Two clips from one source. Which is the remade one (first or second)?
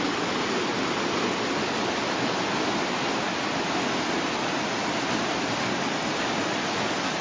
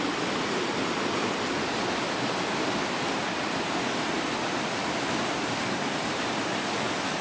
second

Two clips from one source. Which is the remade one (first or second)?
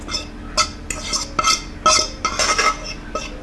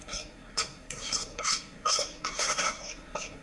second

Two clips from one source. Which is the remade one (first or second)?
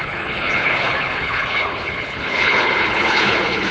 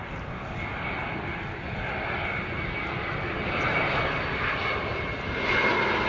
first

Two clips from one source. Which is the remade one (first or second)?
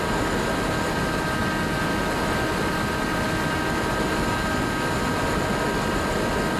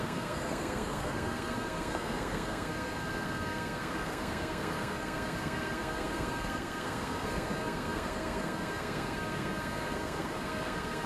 second